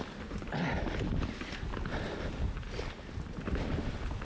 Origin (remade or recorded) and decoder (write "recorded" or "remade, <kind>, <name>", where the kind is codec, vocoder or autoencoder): recorded